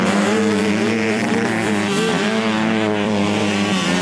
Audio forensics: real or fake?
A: fake